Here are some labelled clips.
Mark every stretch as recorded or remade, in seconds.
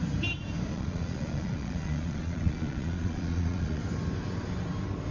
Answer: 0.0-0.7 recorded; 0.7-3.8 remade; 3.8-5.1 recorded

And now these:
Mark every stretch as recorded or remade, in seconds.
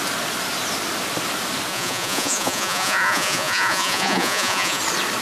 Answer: 0.0-1.7 recorded; 1.7-4.8 remade; 4.8-5.2 recorded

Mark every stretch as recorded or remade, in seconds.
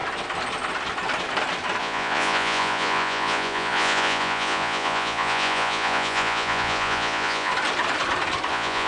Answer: 0.0-1.8 recorded; 1.8-7.5 remade; 7.5-8.5 recorded; 8.5-8.9 remade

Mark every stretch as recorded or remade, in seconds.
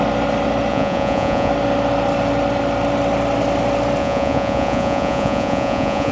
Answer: 0.0-0.7 recorded; 0.7-1.5 remade; 1.5-4.0 recorded; 4.0-6.1 remade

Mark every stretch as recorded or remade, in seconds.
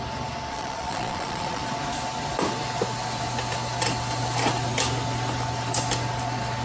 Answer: 0.0-0.5 recorded; 0.5-1.6 remade; 1.6-6.6 recorded